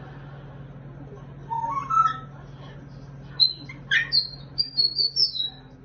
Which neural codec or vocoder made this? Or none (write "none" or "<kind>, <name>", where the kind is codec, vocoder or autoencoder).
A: none